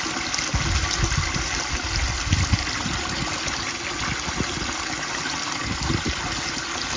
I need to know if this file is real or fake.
real